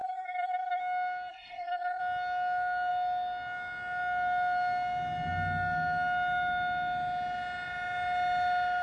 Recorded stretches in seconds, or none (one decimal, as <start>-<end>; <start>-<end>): 0.8-1.3; 2.0-8.8